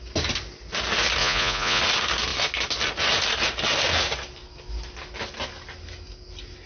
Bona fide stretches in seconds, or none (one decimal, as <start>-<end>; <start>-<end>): 0.0-1.2; 1.8-6.7